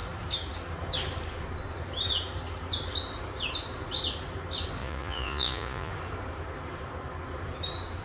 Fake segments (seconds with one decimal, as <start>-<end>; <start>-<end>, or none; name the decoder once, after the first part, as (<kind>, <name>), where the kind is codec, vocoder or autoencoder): 4.8-5.9 (vocoder, Vocos)